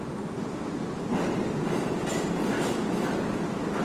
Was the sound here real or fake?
real